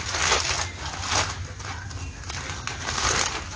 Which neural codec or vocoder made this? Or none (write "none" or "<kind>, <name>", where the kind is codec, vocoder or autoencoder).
none